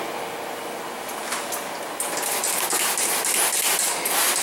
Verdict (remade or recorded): recorded